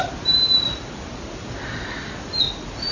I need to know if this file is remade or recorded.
recorded